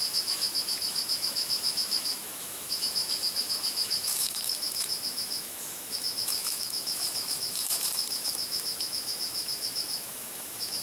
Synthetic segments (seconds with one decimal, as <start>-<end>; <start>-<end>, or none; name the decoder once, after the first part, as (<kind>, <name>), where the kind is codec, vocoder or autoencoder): 0.0-10.8 (autoencoder, DAC-VAE)